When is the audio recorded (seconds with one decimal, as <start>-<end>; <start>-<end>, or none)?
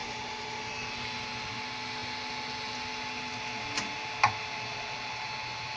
0.0-5.8